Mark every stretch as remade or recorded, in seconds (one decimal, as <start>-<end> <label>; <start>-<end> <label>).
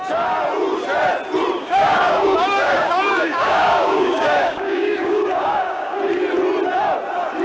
0.0-1.6 recorded; 1.6-6.0 remade; 6.0-7.4 recorded